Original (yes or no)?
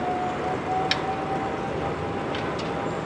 yes